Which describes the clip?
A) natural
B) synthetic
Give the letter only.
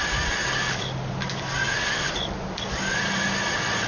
A